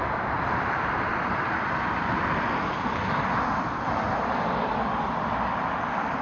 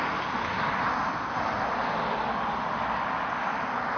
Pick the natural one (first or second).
second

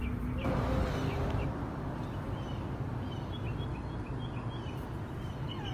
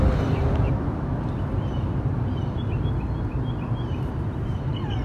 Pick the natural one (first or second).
first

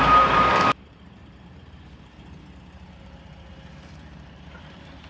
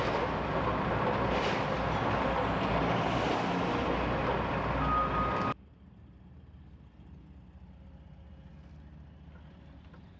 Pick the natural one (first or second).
second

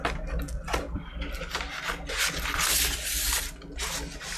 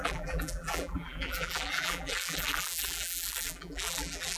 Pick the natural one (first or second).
first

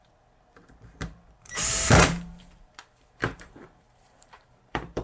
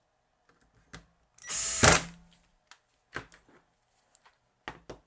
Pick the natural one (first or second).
second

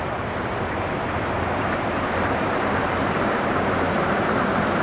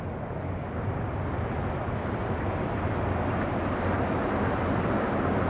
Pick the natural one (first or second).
second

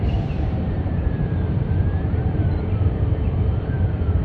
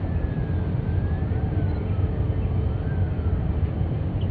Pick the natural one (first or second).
second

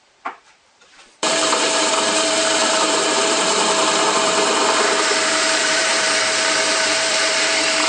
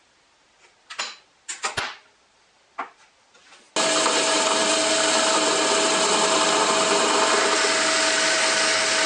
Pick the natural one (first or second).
second